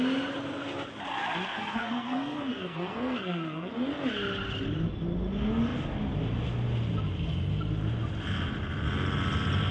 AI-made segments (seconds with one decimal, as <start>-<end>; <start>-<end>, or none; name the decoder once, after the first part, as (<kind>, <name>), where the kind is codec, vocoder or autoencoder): 1.5-3.7 (codec, SNAC)